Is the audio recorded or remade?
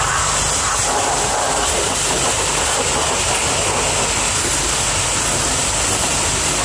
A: recorded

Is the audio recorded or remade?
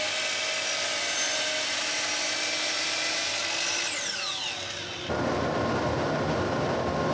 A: recorded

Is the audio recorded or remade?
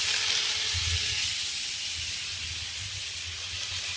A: recorded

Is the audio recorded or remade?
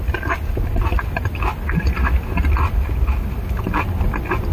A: recorded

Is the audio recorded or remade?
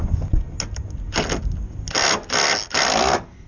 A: recorded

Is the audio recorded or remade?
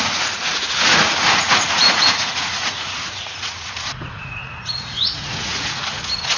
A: remade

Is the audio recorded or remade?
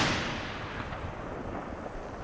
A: remade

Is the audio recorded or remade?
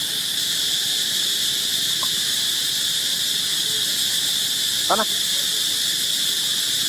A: remade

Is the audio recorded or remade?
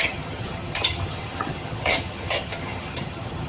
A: remade